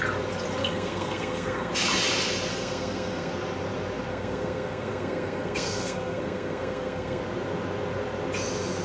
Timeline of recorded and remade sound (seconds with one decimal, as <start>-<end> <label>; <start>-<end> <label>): 0.0-0.6 recorded; 0.6-1.7 remade; 1.7-2.5 recorded; 2.5-3.3 remade; 3.3-4.1 recorded; 4.1-7.2 remade; 7.2-8.8 recorded